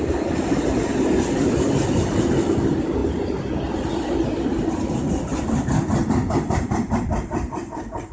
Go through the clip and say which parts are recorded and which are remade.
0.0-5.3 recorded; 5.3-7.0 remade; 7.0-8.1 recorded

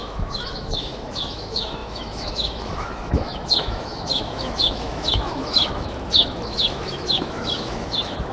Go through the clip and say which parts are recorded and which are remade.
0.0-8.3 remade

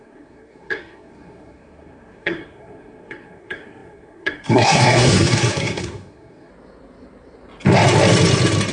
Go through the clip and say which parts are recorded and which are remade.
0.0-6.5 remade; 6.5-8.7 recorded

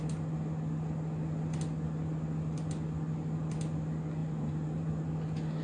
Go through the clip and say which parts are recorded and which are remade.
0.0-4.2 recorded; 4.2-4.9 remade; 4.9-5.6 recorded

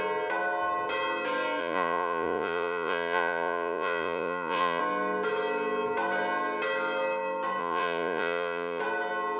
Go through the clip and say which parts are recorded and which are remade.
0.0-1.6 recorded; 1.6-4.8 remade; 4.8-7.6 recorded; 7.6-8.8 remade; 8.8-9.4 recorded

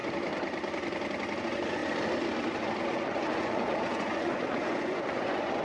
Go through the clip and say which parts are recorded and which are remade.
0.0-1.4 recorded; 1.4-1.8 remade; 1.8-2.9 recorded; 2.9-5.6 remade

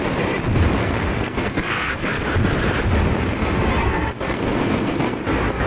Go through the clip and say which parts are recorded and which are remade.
0.0-0.8 recorded; 0.8-2.2 remade; 2.2-3.8 recorded; 3.8-5.2 remade; 5.2-5.7 recorded

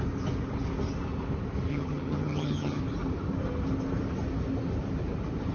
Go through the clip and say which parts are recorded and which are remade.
0.0-1.7 recorded; 1.7-2.8 remade; 2.8-5.5 recorded